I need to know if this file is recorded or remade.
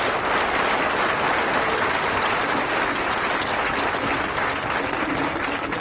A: recorded